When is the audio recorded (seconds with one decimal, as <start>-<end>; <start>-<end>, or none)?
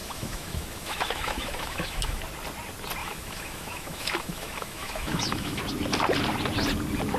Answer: 2.2-3.0; 5.6-7.2